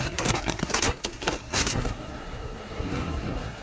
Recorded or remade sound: remade